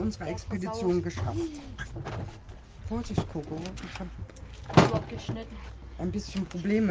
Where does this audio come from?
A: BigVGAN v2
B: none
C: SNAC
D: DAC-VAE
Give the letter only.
B